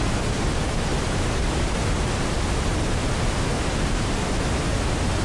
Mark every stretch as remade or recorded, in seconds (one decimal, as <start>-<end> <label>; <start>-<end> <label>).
0.0-5.2 recorded